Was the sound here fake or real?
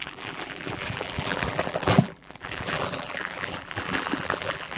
fake